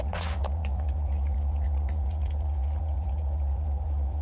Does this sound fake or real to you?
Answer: fake